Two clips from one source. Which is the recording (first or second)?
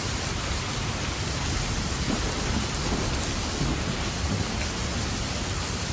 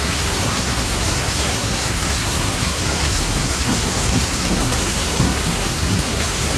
first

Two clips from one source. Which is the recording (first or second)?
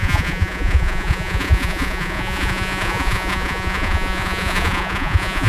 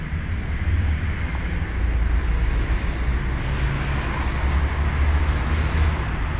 second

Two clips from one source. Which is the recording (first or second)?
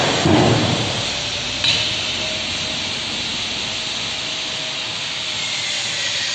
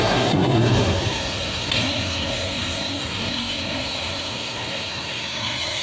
first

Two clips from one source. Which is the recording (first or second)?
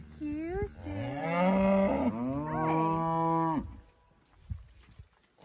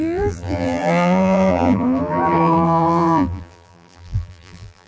first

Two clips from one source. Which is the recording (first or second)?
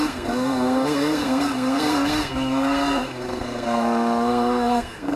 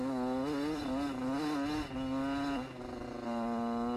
second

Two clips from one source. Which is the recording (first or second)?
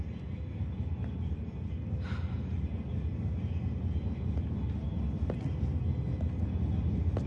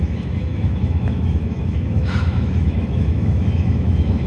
first